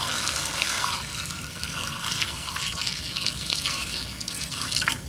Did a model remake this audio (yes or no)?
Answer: yes